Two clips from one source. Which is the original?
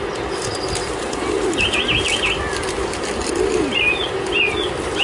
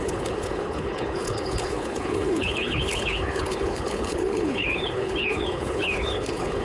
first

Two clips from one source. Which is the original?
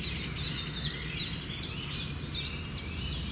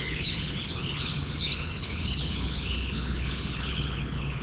first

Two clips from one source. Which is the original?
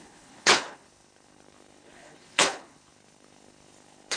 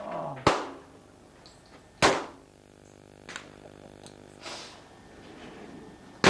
second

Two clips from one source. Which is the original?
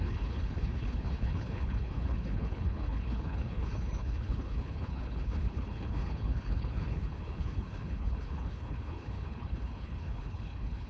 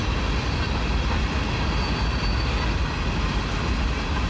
second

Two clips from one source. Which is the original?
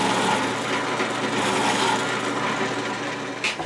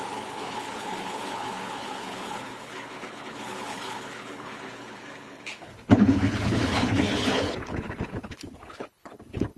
first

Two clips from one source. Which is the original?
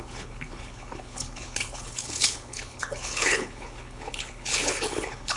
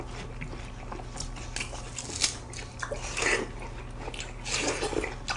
second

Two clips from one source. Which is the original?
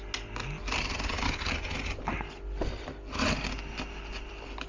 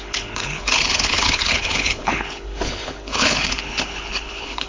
first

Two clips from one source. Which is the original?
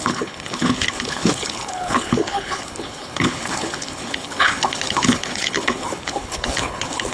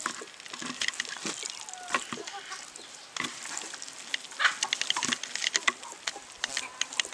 second